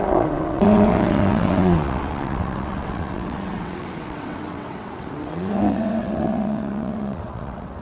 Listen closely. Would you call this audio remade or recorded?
remade